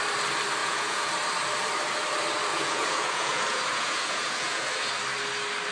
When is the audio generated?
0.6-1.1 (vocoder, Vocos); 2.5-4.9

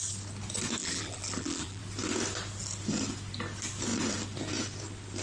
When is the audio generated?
0.8-1.8 (vocoder, BigVGAN v2)